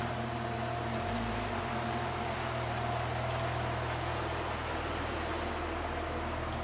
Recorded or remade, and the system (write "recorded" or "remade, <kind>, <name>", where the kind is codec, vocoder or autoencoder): recorded